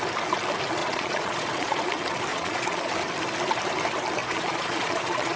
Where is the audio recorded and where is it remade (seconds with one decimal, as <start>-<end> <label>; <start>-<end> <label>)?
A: 0.0-0.8 recorded; 0.8-1.8 remade; 1.8-2.3 recorded; 2.3-2.9 remade; 2.9-4.2 recorded; 4.2-5.4 remade